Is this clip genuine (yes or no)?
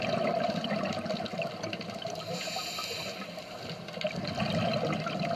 yes